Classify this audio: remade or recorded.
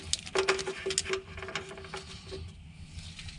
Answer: recorded